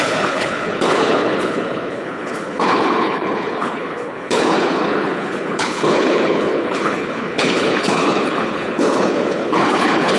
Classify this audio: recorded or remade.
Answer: remade